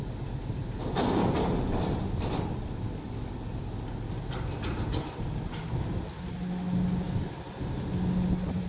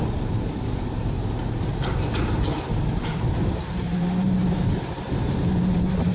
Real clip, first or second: first